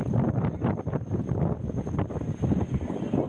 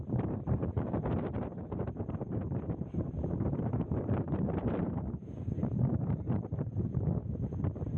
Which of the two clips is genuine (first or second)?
first